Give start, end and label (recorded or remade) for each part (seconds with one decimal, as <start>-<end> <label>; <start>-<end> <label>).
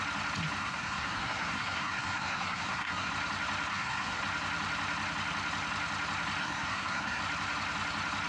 0.0-0.6 recorded; 0.6-3.1 remade; 3.1-3.7 recorded; 3.7-4.2 remade; 4.2-6.4 recorded; 6.4-7.2 remade; 7.2-8.3 recorded